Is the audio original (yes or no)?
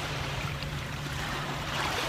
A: no